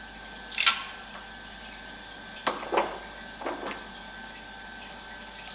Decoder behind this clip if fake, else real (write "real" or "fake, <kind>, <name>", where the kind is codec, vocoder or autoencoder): real